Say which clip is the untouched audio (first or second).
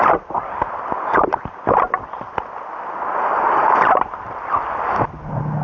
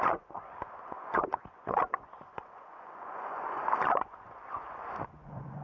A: first